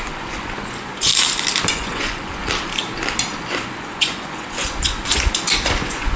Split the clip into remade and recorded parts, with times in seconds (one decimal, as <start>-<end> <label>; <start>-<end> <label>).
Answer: 0.0-1.1 remade; 1.1-1.7 recorded; 1.7-2.4 remade; 2.4-3.4 recorded; 3.4-6.2 remade